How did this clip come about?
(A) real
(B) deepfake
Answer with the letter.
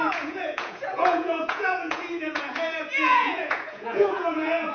B